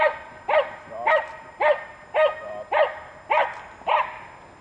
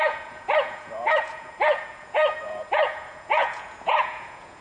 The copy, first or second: second